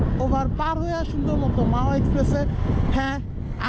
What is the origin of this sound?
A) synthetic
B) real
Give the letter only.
B